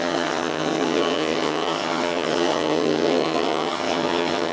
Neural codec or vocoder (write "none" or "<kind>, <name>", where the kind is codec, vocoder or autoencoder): vocoder, HiFi-GAN